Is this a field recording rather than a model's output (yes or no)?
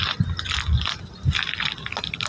yes